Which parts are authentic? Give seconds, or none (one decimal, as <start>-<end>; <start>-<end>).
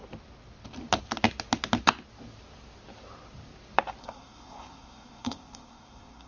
0.0-4.0